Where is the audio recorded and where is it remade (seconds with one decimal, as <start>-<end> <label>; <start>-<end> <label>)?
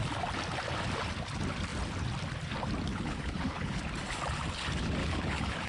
0.0-2.9 recorded; 2.9-3.8 remade; 3.8-5.0 recorded; 5.0-5.7 remade